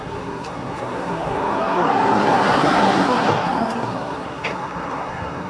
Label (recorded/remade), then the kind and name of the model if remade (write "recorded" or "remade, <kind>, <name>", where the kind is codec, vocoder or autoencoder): remade, codec, SNAC